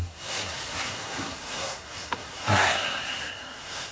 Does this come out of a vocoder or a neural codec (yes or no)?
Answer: yes